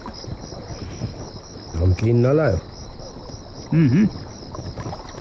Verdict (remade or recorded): recorded